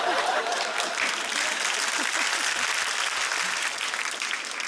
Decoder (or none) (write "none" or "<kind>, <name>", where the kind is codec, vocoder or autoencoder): vocoder, BigVGAN v2